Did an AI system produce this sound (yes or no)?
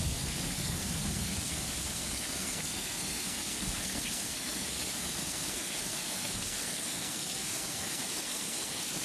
yes